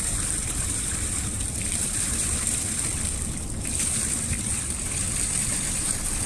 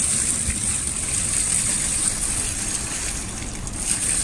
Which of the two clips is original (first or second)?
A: second